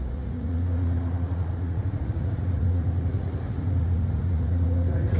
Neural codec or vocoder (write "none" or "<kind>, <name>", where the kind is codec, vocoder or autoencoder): vocoder, Vocos